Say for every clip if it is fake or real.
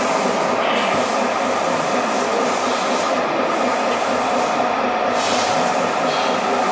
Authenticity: real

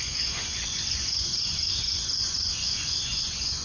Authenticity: fake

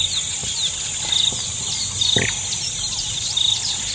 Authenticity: real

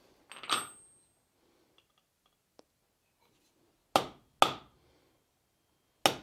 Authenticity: real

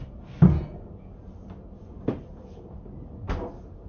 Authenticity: real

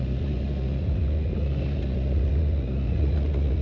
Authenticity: fake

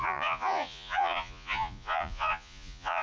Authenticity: fake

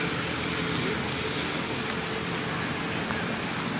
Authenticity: real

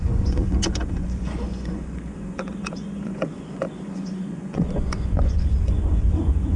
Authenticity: fake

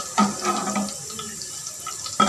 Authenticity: real